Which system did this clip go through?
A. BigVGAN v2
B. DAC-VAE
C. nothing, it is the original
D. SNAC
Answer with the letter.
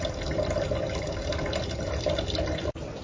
A